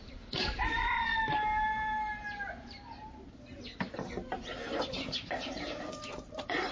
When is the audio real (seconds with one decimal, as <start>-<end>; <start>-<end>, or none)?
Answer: 1.1-4.8

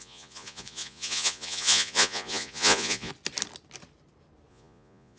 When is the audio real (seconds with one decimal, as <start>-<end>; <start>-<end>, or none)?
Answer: 3.1-4.5

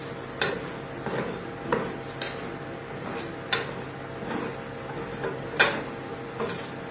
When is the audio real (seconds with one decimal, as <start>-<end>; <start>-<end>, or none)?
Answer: 0.0-6.9

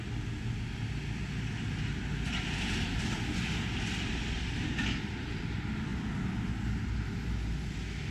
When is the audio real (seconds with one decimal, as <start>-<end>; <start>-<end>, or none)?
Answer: 0.0-8.1

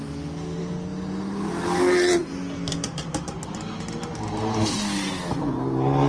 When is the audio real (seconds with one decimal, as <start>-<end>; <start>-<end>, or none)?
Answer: 0.0-6.1

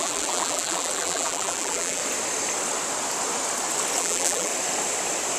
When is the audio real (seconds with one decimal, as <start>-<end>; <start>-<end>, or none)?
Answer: 2.0-4.0; 4.5-5.4

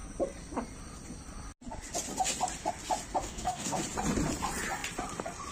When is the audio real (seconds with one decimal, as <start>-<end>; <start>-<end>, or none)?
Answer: 0.0-3.2; 3.8-5.5

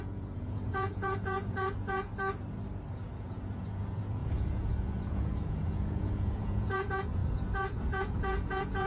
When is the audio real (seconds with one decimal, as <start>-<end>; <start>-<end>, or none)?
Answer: 2.1-2.9